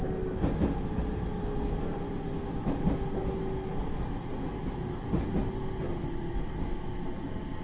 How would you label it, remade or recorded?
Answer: recorded